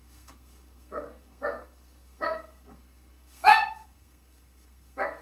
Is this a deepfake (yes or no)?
yes